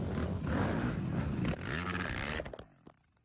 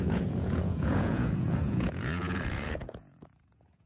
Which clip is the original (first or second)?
first